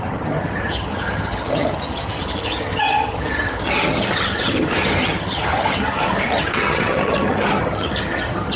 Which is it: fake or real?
fake